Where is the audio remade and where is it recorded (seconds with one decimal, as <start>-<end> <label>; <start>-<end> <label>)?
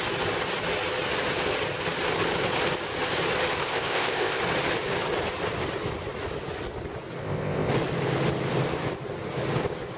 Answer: 0.0-3.6 recorded; 3.6-4.4 remade; 4.4-7.2 recorded; 7.2-7.7 remade; 7.7-10.0 recorded